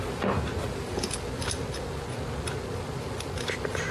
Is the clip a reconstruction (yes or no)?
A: no